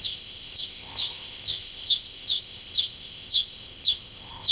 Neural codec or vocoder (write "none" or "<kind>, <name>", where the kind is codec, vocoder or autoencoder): codec, ZipCodec